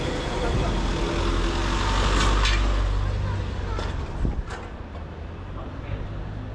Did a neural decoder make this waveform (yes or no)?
no